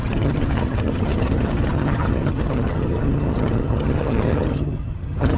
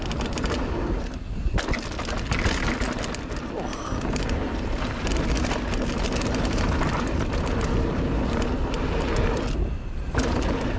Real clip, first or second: second